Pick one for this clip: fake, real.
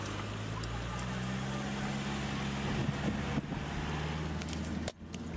real